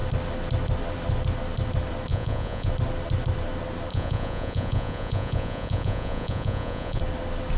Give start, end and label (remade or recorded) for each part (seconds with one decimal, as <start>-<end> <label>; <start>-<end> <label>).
0.0-2.1 recorded; 2.1-2.7 remade; 2.7-3.9 recorded; 3.9-7.0 remade; 7.0-7.6 recorded